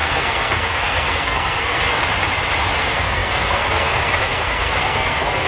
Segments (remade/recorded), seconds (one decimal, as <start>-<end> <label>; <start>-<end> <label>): 0.0-2.0 remade; 2.0-2.8 recorded; 2.8-5.5 remade